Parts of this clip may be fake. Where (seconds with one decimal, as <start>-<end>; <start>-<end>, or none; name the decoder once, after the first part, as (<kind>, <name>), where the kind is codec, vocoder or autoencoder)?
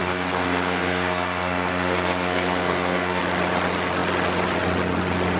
0.0-3.2 (codec, SNAC)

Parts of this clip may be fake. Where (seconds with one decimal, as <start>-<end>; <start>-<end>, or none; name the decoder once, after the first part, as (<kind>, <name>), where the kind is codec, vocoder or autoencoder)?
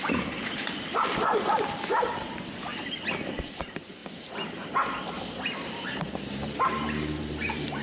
0.0-2.7 (vocoder, BigVGAN v2); 3.5-4.0; 6.0-7.8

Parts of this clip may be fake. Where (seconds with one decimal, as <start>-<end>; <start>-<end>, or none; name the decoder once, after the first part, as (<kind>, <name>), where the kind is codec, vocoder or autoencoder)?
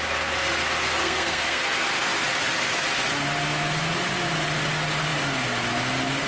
1.0-1.6 (codec, SNAC)